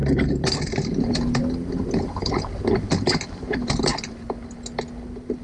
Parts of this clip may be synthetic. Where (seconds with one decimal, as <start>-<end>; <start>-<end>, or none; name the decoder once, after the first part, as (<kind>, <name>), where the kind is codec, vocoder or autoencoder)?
0.0-3.9 (vocoder, BigVGAN v2)